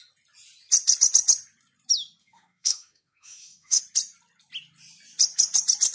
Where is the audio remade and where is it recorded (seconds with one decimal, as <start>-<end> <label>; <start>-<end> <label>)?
0.0-2.2 recorded; 2.2-3.8 remade; 3.8-5.9 recorded